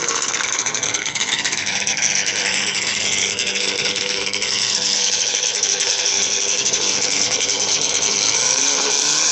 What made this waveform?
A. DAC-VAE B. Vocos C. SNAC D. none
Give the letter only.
C